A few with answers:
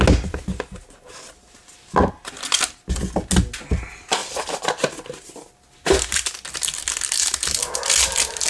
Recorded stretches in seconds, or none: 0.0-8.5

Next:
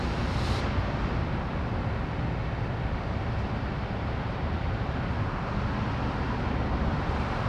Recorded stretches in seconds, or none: 0.0-7.5

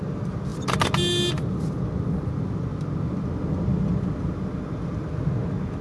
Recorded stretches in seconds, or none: 0.0-5.8

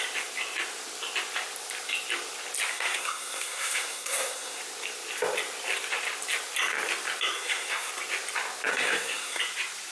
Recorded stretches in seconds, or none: 0.0-2.7; 4.6-7.3; 7.9-8.7; 9.4-9.9

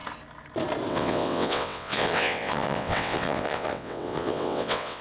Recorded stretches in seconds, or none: 0.0-0.9